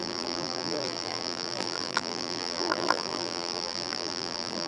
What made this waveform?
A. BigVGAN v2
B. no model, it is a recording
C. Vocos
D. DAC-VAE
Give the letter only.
A